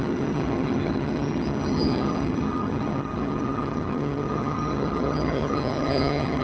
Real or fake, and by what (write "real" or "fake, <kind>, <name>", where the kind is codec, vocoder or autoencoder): fake, vocoder, HiFi-GAN